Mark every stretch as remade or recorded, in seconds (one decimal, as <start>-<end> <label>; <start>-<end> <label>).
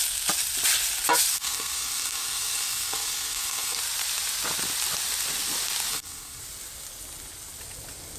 0.0-1.3 recorded; 1.3-3.8 remade; 3.8-5.9 recorded; 5.9-6.4 remade; 6.4-8.2 recorded